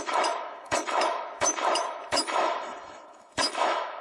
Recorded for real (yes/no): no